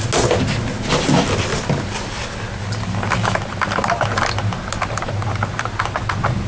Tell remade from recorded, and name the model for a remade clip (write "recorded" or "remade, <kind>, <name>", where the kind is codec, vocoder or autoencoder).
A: recorded